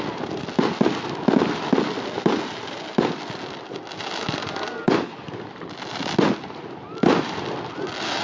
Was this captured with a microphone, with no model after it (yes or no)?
yes